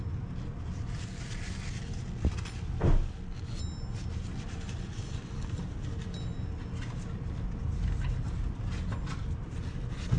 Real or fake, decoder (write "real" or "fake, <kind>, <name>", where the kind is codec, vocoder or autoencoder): real